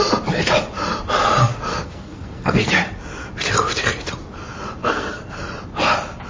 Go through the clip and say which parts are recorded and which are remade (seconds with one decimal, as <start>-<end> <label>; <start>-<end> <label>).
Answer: 0.0-1.4 recorded; 1.4-2.7 remade; 2.7-4.8 recorded; 4.8-5.4 remade; 5.4-6.3 recorded